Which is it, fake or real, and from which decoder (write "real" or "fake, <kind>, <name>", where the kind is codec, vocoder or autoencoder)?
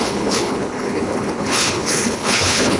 fake, codec, HILCodec